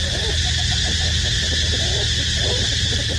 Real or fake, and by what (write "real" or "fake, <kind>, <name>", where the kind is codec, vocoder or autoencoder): real